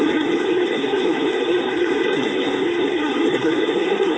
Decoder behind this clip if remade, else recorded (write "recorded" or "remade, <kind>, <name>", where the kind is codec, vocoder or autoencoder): remade, codec, SNAC